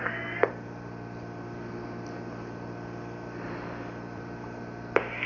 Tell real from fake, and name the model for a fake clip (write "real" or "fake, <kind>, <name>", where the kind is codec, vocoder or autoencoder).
real